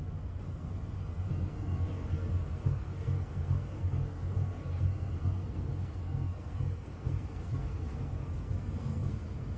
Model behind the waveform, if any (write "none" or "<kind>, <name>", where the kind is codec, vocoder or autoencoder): codec, SNAC